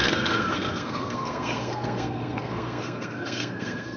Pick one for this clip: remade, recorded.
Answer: remade